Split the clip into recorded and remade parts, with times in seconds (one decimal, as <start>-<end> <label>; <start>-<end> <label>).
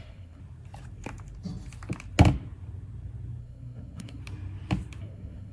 0.0-0.4 remade; 0.4-3.4 recorded; 3.4-4.2 remade; 4.2-5.0 recorded; 5.0-5.5 remade